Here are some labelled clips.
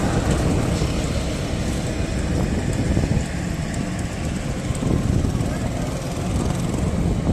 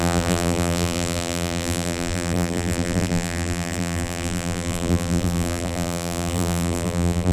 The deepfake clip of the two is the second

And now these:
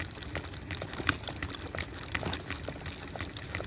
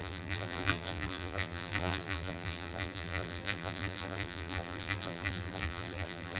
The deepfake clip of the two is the second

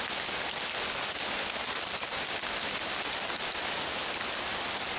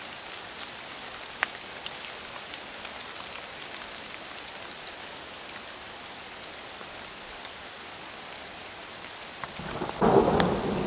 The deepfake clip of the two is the second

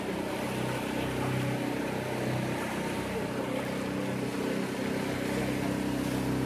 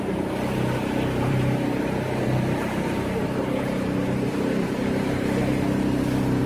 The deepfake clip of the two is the second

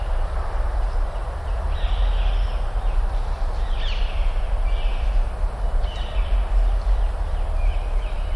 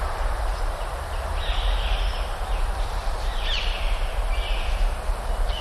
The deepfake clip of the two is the second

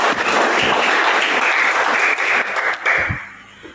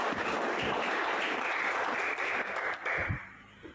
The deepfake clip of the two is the second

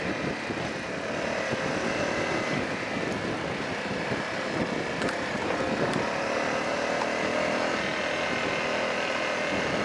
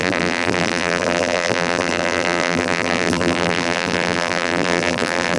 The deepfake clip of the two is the second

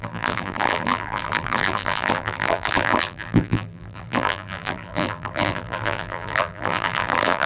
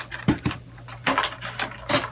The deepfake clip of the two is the first